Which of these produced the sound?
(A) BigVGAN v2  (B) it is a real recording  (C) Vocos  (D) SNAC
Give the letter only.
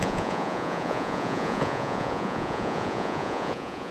C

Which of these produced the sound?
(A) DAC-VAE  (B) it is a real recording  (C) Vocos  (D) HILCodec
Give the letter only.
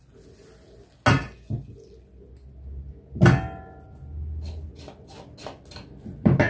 B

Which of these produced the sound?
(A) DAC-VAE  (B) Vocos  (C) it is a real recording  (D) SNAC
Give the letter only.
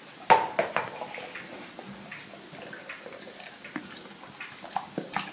C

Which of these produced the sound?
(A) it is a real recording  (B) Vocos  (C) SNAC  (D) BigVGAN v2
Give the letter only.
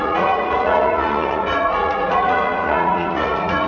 B